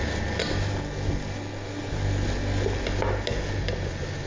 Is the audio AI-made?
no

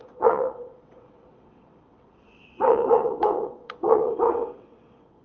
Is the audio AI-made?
yes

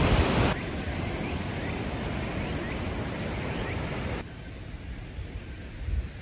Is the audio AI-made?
no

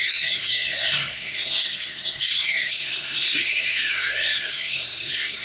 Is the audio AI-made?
yes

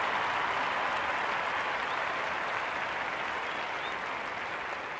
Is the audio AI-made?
no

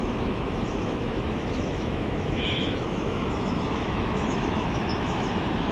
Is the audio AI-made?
yes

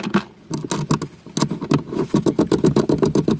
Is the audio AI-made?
no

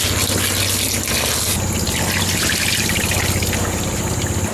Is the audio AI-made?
no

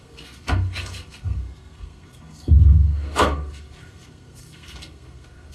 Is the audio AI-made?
yes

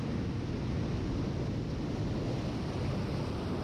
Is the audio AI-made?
no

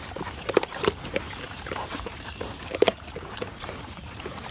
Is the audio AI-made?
yes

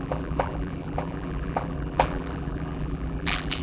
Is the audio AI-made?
yes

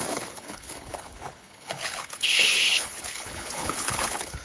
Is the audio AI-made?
yes